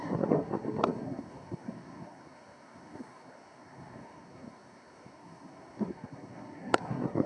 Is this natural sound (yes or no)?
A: no